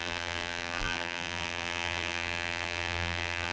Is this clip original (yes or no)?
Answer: no